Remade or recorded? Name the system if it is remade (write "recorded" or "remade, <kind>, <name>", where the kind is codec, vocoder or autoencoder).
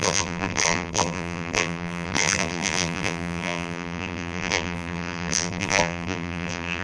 remade, vocoder, BigVGAN v2